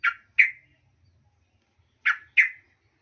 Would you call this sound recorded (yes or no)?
yes